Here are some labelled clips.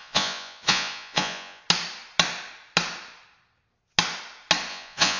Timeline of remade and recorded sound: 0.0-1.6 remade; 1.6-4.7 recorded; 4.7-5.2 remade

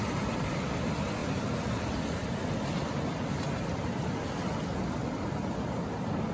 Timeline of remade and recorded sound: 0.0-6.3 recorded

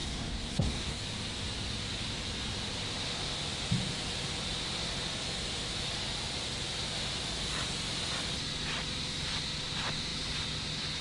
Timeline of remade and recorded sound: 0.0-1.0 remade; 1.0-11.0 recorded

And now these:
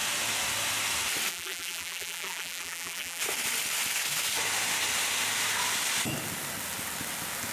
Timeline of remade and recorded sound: 0.0-1.3 recorded; 1.3-3.2 remade; 3.2-7.5 recorded